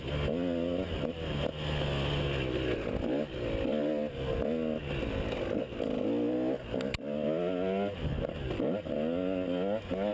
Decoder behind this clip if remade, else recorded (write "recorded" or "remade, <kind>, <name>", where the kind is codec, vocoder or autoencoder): recorded